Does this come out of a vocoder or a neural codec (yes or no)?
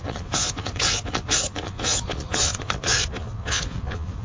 yes